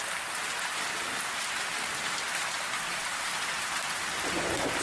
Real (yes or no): yes